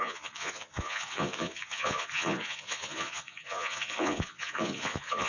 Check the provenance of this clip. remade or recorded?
remade